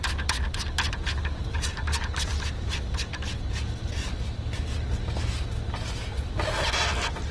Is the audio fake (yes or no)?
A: no